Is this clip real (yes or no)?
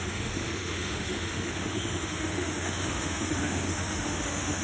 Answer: no